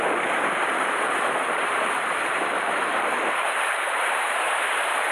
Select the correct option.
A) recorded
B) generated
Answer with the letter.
B